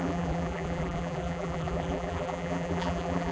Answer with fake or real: fake